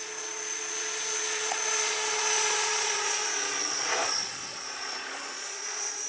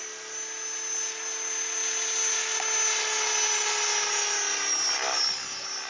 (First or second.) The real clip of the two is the second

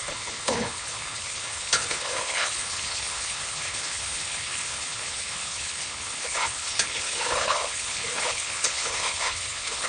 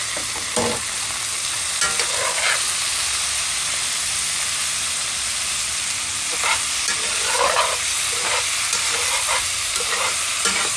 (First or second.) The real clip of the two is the second